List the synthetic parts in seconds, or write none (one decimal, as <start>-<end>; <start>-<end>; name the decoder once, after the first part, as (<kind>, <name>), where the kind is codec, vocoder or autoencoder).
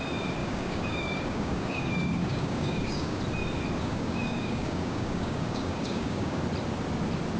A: 0.4-3.2 (codec, DAC); 3.8-6.4